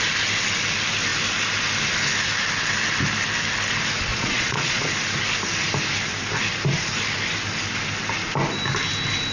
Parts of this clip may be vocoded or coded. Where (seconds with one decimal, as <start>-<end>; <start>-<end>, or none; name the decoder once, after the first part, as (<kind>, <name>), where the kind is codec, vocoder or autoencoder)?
4.1-4.9 (vocoder, Vocos)